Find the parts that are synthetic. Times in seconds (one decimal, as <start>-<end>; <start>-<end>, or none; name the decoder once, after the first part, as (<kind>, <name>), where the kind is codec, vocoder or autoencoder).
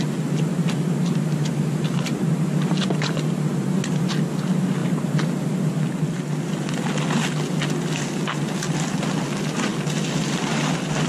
none